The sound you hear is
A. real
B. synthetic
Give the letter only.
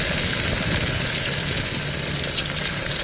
A